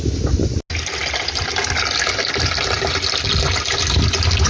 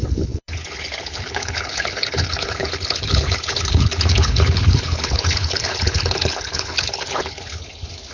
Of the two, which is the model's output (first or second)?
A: second